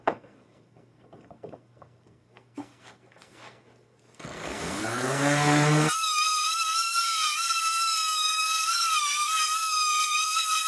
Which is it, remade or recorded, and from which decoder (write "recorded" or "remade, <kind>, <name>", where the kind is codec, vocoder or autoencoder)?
remade, codec, SNAC